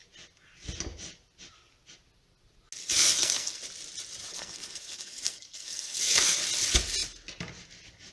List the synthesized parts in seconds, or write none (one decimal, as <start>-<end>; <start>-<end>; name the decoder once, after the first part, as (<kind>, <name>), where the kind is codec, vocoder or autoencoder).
2.8-3.6 (codec, SNAC); 4.3-6.4